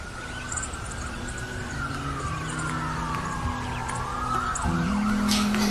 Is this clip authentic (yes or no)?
yes